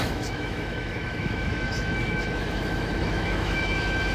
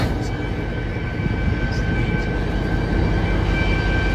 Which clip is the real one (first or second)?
second